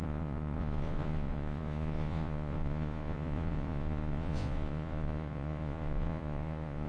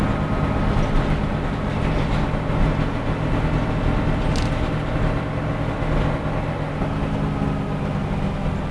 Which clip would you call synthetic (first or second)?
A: first